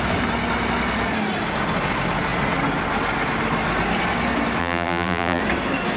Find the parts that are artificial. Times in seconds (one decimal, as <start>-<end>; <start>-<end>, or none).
4.6-5.4